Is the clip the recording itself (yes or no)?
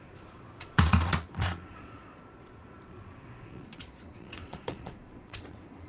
no